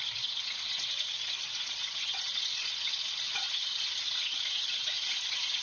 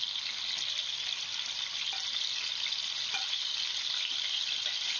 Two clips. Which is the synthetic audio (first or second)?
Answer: first